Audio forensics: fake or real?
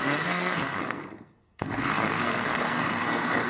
fake